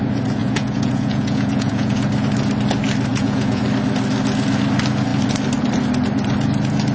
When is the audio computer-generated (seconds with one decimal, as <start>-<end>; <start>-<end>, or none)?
0.4-2.1; 3.1-3.6